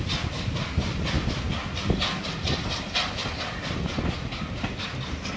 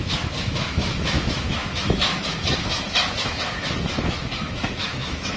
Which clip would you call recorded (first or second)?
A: first